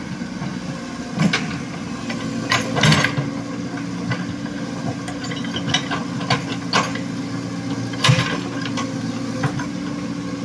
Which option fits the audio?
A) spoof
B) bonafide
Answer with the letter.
B